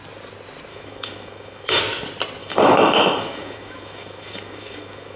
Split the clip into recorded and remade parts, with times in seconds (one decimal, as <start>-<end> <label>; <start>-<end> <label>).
0.0-0.7 recorded; 0.7-1.8 remade; 1.8-2.4 recorded; 2.4-5.2 remade

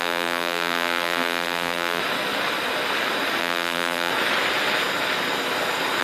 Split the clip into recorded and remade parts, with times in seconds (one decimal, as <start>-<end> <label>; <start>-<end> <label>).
0.0-2.0 remade; 2.0-3.4 recorded; 3.4-4.1 remade; 4.1-6.0 recorded

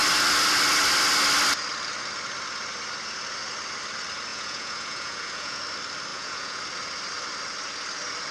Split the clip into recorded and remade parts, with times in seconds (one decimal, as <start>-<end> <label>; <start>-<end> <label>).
0.0-4.3 recorded; 4.3-5.6 remade; 5.6-6.1 recorded; 6.1-6.6 remade; 6.6-8.3 recorded

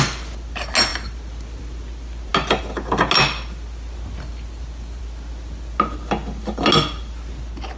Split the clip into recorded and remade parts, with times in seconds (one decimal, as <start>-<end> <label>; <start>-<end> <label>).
0.0-7.8 recorded

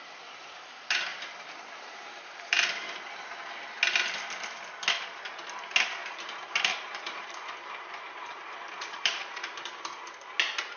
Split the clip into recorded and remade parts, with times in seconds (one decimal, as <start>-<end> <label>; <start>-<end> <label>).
0.0-1.1 recorded; 1.1-3.0 remade; 3.0-6.0 recorded; 6.0-9.7 remade; 9.7-10.8 recorded

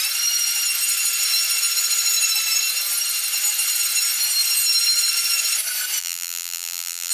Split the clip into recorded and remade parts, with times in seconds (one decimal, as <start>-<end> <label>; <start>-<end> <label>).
0.0-6.0 recorded; 6.0-7.1 remade

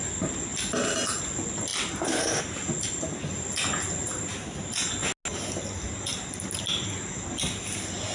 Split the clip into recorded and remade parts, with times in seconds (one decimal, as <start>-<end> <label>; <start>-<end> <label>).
0.0-8.1 recorded